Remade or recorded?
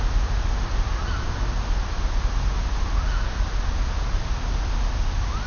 recorded